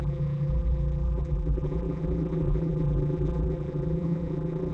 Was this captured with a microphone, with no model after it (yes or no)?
no